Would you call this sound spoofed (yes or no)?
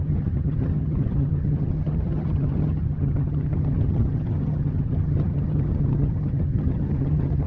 yes